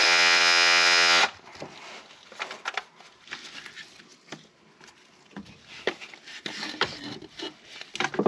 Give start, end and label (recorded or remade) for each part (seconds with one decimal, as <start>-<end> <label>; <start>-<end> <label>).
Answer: 0.0-1.2 remade; 1.2-8.3 recorded